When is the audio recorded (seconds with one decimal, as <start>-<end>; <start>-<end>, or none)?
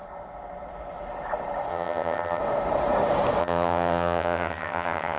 0.0-1.7; 2.4-3.4